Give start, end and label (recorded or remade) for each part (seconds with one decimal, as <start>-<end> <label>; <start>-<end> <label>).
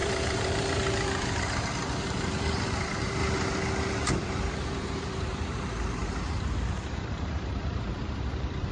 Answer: 0.0-3.2 remade; 3.2-4.1 recorded; 4.1-8.7 remade